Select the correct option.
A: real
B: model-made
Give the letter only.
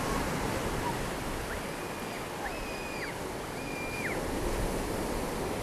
A